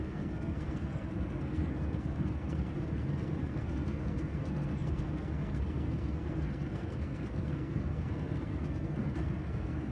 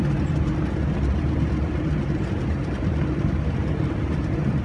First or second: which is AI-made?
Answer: first